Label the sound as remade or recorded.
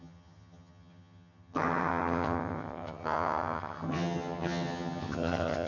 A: remade